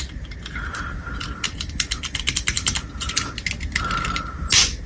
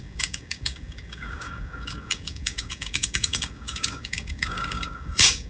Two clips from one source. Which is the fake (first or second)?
second